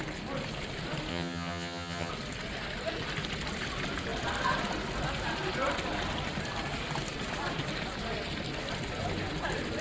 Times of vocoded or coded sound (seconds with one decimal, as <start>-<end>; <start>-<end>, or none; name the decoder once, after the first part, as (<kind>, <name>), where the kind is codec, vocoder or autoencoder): 1.1-2.1 (vocoder, HiFi-GAN)

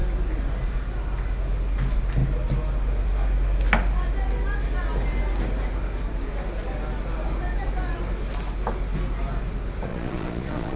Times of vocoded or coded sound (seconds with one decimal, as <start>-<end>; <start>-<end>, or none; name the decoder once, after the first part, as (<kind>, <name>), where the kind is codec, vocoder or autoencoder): 9.9-10.8 (vocoder, Vocos)

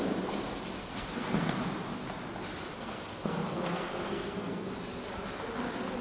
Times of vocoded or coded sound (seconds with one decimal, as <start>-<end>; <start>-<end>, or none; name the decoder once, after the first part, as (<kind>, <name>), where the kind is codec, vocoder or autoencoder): 0.8-1.6 (codec, SNAC); 2.7-4.7